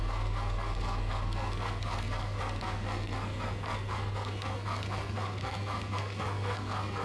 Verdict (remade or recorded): remade